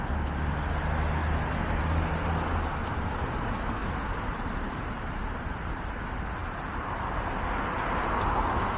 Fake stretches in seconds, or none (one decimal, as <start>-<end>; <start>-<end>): 3.8-4.9; 6.4-7.6